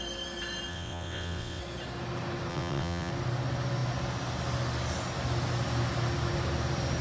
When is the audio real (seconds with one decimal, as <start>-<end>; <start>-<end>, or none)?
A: 0.0-0.7; 1.6-2.5; 3.1-7.0